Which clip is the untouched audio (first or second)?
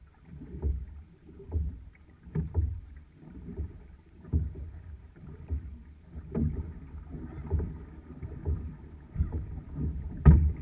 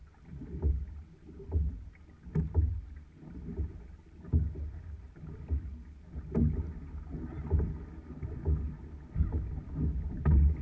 second